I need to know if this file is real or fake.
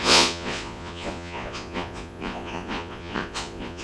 fake